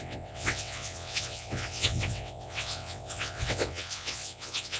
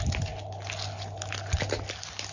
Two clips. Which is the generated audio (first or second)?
first